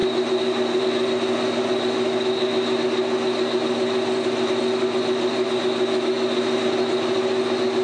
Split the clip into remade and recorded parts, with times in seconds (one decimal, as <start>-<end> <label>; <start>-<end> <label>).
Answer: 0.0-7.8 recorded